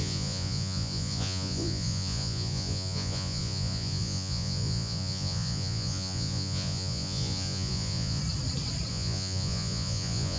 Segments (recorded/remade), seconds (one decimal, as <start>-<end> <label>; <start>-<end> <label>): 0.0-8.2 remade; 8.2-8.9 recorded; 8.9-10.4 remade